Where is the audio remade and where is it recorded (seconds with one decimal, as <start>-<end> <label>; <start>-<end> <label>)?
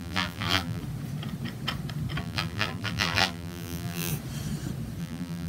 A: 0.0-0.8 remade; 0.8-2.2 recorded; 2.2-4.1 remade; 4.1-5.0 recorded; 5.0-5.5 remade